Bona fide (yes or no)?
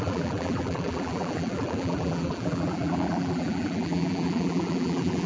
no